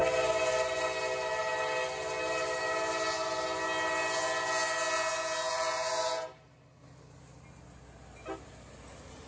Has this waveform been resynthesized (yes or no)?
no